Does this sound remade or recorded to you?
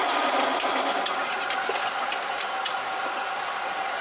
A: recorded